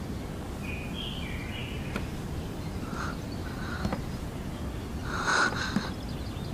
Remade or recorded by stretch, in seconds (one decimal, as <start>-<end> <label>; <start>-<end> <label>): 0.0-1.6 recorded; 1.6-3.4 remade; 3.4-5.3 recorded; 5.3-5.9 remade; 5.9-6.5 recorded